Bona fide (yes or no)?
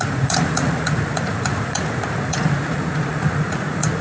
no